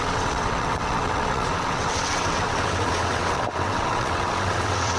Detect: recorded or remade remade